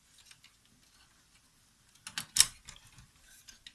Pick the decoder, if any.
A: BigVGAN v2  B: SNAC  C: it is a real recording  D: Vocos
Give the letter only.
C